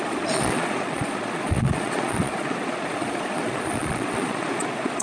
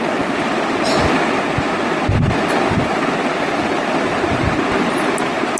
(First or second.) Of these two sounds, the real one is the second